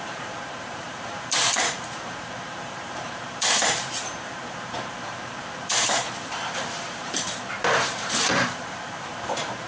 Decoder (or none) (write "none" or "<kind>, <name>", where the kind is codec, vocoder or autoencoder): vocoder, BigVGAN v2